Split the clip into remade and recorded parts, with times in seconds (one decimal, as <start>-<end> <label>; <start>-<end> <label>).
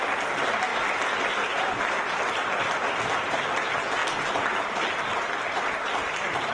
0.0-6.5 recorded